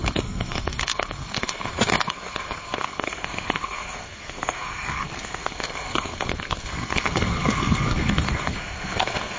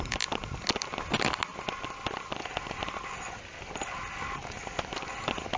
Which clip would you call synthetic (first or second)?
first